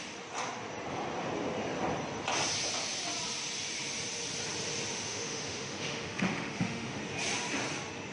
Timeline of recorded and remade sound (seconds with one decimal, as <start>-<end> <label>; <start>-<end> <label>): 0.0-4.9 recorded; 4.9-7.0 remade; 7.0-8.1 recorded